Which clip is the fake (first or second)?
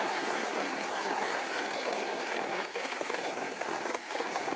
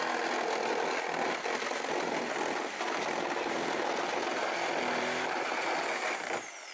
first